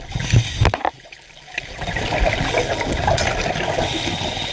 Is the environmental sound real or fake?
real